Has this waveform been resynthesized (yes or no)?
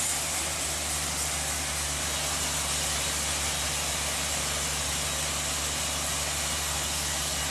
no